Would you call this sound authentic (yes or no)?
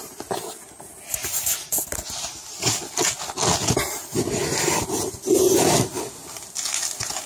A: yes